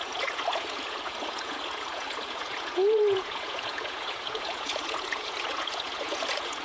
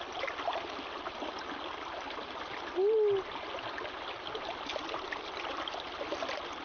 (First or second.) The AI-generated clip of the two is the first